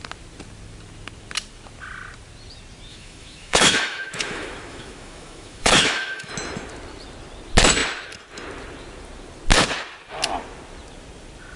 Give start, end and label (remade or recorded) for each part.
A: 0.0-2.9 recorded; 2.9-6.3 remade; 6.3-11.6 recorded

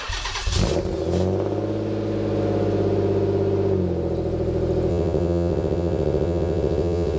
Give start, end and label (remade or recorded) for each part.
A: 0.0-4.9 recorded; 4.9-7.2 remade